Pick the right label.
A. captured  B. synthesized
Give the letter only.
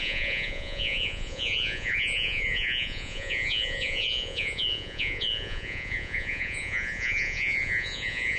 B